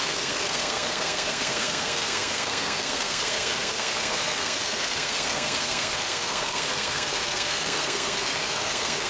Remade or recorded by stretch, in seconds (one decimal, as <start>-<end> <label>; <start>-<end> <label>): 0.0-9.1 remade